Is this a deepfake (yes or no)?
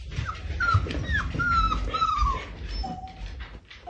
no